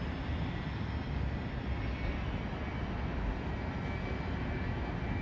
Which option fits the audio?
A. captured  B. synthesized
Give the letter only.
A